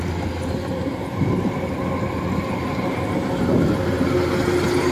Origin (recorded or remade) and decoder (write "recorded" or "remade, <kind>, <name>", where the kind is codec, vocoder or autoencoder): recorded